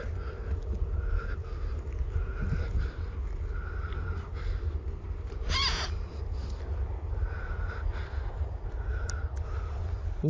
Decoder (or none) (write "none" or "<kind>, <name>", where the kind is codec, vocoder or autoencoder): none